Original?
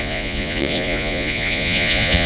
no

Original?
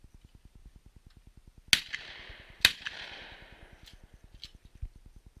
yes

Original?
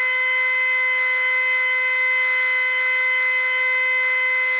no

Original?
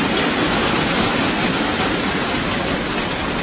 yes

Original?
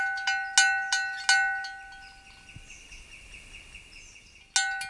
yes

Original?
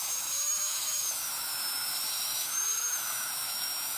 no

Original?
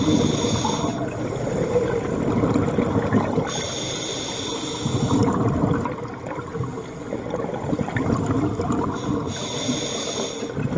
yes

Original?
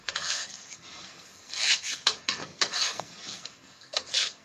no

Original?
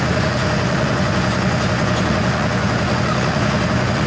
no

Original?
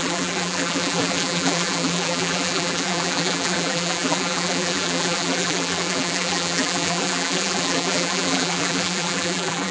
no